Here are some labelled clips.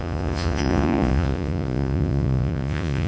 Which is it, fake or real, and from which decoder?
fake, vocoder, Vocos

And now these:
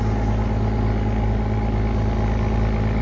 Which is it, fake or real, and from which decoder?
real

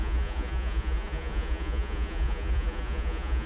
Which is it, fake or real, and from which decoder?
fake, vocoder, Vocos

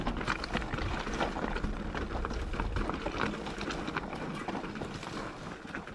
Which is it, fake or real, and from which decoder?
real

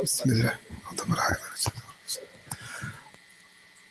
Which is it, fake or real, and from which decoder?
fake, vocoder, Vocos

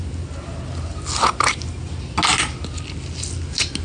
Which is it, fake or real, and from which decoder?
real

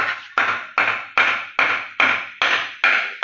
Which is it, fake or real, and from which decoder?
real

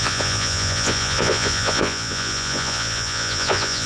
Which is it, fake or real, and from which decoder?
fake, vocoder, Vocos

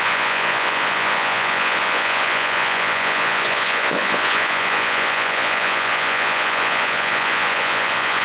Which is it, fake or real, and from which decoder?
fake, vocoder, Vocos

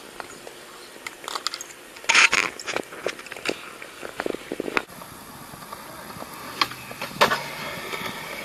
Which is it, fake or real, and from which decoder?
real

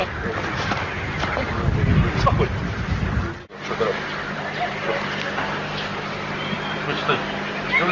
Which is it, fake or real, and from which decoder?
real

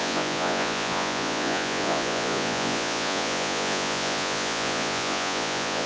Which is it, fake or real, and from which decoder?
fake, vocoder, Vocos